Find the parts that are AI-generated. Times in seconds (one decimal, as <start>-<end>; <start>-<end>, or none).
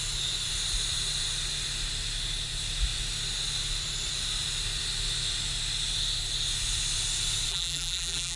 7.5-8.4